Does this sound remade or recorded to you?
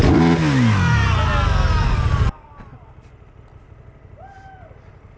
recorded